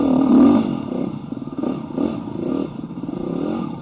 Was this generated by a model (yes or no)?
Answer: no